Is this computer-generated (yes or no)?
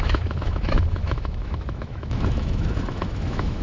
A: yes